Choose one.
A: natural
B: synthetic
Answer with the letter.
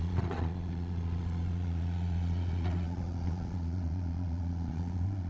B